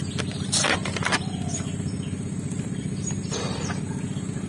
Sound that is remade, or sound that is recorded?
recorded